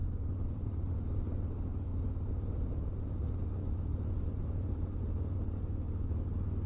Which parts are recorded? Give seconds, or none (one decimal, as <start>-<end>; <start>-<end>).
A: 0.9-6.7